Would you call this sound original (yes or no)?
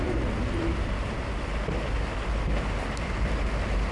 yes